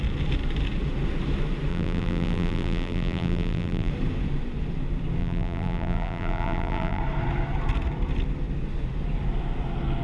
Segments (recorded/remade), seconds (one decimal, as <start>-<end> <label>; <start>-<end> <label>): 0.0-1.7 recorded; 1.7-3.9 remade; 3.9-5.2 recorded; 5.2-7.0 remade; 7.0-10.0 recorded